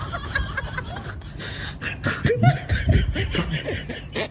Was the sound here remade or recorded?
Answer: recorded